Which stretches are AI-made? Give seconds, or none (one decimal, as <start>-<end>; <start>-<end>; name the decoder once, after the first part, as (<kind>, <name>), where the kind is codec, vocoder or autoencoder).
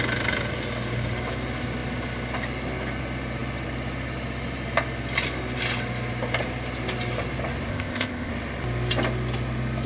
7.7-8.3 (codec, ZipCodec)